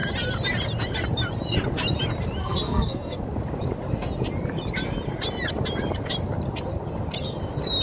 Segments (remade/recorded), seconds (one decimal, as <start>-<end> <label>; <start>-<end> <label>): 0.0-2.4 recorded; 2.4-3.2 remade; 3.2-7.8 recorded